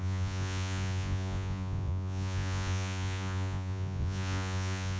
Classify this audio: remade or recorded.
remade